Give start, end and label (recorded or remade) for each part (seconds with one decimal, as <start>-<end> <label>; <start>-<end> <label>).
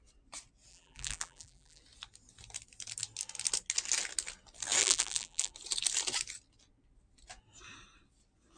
0.0-0.7 recorded; 0.7-1.8 remade; 1.8-4.8 recorded; 4.8-5.5 remade; 5.5-8.6 recorded